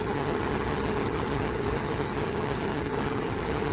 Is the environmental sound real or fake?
fake